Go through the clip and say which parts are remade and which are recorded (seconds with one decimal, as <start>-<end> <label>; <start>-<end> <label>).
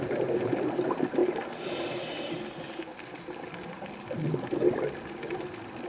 0.0-5.9 recorded